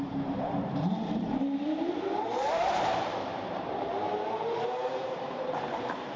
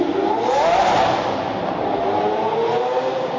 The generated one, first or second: first